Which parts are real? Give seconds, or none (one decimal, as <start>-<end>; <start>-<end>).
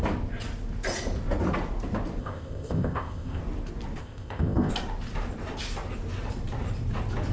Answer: 0.0-2.2; 3.4-4.0; 4.7-7.3